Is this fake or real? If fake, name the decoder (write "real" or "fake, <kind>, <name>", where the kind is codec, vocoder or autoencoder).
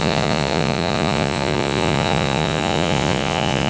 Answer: fake, vocoder, Vocos